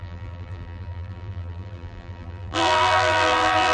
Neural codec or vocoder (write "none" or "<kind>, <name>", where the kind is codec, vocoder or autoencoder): vocoder, BigVGAN v2